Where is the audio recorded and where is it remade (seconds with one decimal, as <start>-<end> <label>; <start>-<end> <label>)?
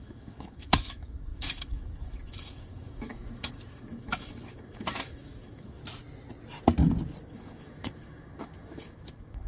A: 0.0-5.8 remade; 5.8-7.3 recorded; 7.3-9.5 remade